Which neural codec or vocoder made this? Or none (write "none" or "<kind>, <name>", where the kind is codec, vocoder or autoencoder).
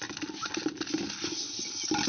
none